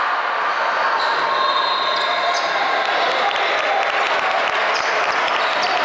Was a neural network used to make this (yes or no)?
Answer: no